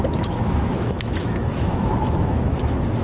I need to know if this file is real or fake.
fake